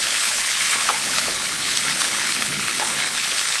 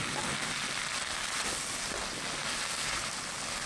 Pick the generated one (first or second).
first